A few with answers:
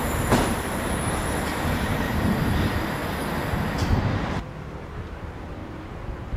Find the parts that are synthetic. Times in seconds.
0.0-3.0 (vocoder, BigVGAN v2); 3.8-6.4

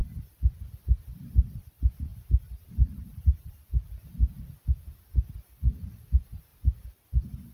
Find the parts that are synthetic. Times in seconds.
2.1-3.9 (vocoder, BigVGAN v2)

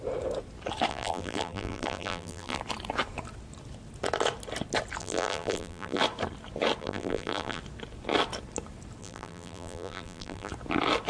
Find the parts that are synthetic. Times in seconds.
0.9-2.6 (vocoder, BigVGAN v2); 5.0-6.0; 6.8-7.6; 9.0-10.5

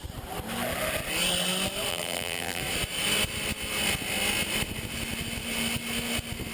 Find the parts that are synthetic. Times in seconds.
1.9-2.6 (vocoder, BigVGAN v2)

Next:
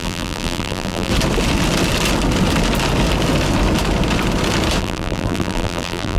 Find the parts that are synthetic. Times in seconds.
0.0-1.1 (vocoder, BigVGAN v2); 4.8-6.2

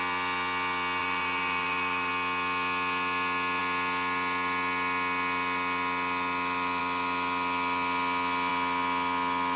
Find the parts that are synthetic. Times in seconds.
1.0-2.1 (vocoder, BigVGAN v2)

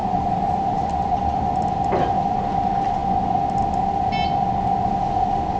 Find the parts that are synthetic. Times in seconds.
0.0-1.5 (vocoder, BigVGAN v2)

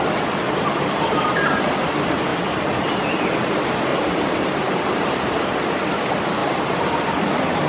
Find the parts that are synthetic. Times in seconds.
3.9-5.4 (vocoder, BigVGAN v2); 6.4-7.1